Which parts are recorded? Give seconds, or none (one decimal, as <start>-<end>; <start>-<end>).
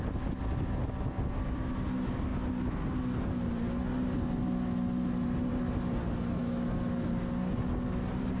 0.0-8.4